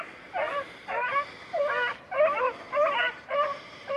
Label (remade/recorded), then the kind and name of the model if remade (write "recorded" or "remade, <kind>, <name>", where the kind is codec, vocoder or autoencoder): recorded